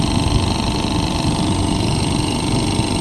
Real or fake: real